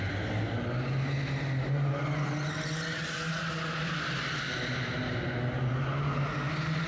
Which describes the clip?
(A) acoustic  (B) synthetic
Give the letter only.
A